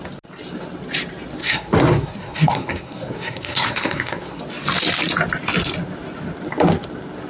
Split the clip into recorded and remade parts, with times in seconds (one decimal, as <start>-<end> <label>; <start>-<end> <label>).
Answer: 0.0-1.4 recorded; 1.4-4.4 remade; 4.4-7.3 recorded